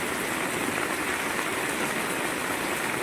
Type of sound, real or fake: real